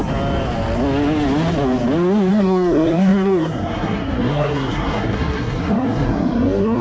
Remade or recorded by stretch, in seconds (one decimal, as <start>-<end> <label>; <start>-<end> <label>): 0.0-2.3 recorded; 2.3-6.8 remade